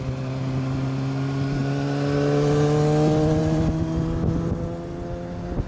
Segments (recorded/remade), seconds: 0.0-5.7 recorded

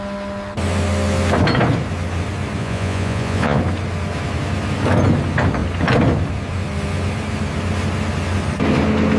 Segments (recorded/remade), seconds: 0.0-2.6 recorded; 2.6-3.6 remade; 3.6-9.2 recorded

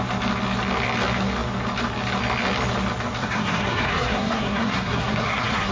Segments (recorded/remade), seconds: 0.0-3.2 recorded; 3.2-5.7 remade

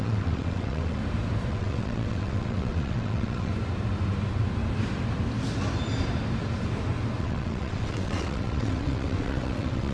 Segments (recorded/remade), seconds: 0.0-1.0 remade; 1.0-1.5 recorded; 1.5-3.5 remade; 3.5-7.2 recorded; 7.2-9.9 remade